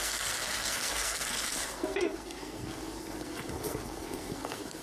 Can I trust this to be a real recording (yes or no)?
no